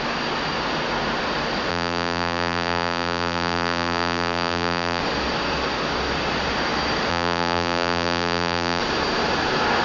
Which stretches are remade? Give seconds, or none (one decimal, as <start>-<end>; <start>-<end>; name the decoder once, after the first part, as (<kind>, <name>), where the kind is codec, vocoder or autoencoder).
1.7-5.0 (vocoder, BigVGAN v2); 7.1-8.8